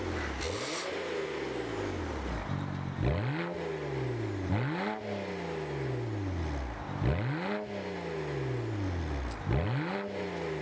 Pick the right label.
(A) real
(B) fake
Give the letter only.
A